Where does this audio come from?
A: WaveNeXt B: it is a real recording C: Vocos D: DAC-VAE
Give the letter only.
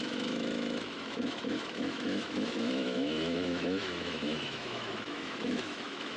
D